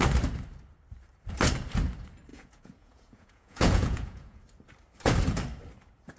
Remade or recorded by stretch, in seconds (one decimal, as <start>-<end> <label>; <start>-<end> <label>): 0.0-2.3 recorded; 2.3-4.4 remade; 4.4-6.2 recorded